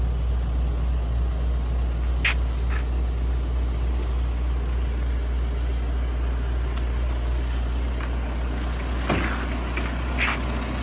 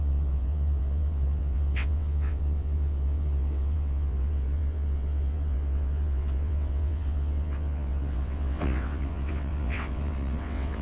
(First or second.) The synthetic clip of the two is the second